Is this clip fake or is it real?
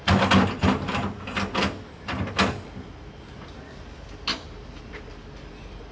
real